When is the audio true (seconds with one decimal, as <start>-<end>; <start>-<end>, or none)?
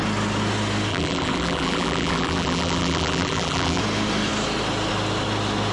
0.0-0.9; 3.8-5.7